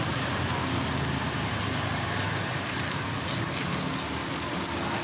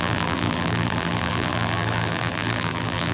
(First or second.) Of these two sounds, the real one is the first